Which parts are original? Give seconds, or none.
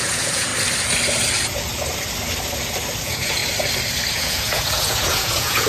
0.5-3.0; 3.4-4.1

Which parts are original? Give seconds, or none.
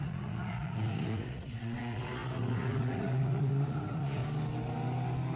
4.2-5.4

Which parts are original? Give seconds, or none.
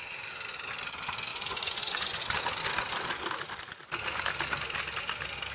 0.0-1.3; 2.2-5.5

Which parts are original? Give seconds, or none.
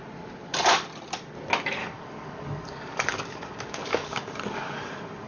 0.0-1.8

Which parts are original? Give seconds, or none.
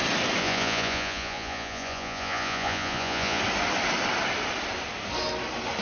0.0-0.4; 3.4-5.8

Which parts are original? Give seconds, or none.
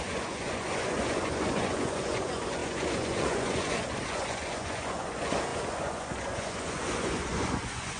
none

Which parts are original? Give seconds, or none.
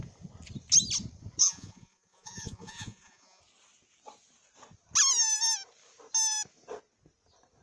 0.0-1.4; 3.4-7.6